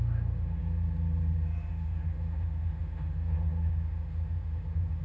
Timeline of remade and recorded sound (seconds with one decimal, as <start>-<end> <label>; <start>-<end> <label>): 0.0-0.6 remade; 0.6-1.7 recorded; 1.7-5.0 remade